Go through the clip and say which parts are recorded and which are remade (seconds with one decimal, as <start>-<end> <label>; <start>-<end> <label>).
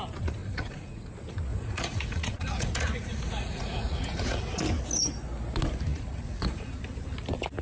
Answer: 0.0-0.4 recorded; 0.4-1.1 remade; 1.1-1.5 recorded; 1.5-4.6 remade; 4.6-5.9 recorded; 5.9-6.8 remade; 6.8-7.6 recorded